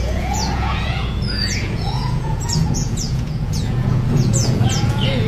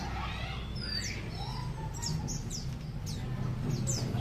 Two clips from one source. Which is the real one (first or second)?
second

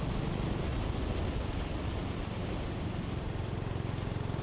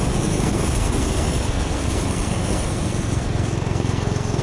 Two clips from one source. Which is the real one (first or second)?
first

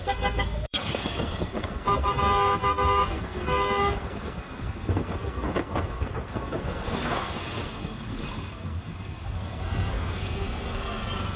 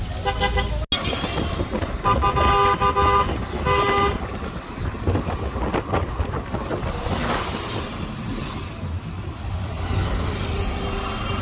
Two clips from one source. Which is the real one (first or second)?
second